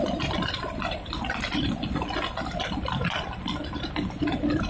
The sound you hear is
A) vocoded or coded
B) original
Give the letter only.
A